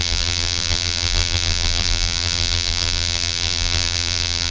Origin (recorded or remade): remade